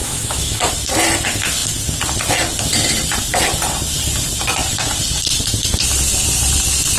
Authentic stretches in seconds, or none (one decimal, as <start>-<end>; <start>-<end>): 0.7-7.0